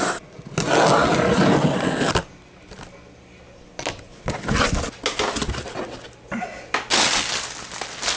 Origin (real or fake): real